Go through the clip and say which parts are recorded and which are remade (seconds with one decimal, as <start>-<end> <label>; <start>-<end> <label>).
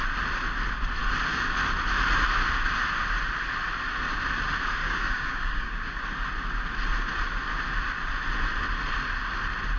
0.0-4.8 recorded; 4.8-6.0 remade; 6.0-9.8 recorded